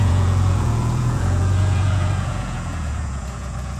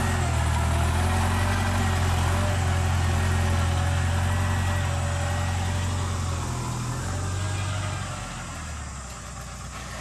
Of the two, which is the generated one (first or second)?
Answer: first